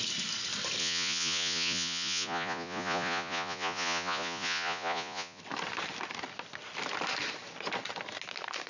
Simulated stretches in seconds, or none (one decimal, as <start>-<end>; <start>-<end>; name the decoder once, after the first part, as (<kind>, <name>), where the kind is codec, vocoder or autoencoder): 0.8-5.4 (vocoder, Vocos)